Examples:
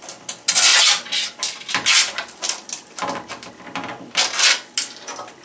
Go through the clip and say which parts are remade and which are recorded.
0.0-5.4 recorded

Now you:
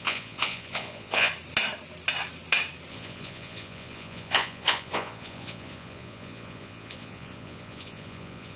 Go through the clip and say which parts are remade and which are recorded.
0.0-1.3 remade; 1.3-2.9 recorded; 2.9-8.6 remade

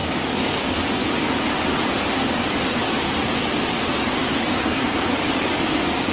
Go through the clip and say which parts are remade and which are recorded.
0.0-1.0 remade; 1.0-4.2 recorded; 4.2-6.1 remade

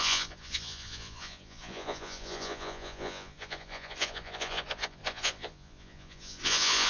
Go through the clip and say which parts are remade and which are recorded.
0.0-6.9 remade

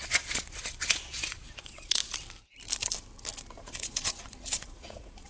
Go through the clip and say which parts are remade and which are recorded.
0.0-2.0 remade; 2.0-3.6 recorded; 3.6-5.3 remade

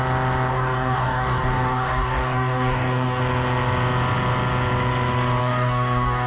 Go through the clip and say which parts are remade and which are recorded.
0.0-0.5 recorded; 0.5-3.2 remade; 3.2-5.4 recorded; 5.4-6.3 remade

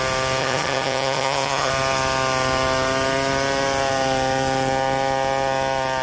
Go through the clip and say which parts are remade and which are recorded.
0.0-0.4 recorded; 0.4-1.7 remade; 1.7-6.0 recorded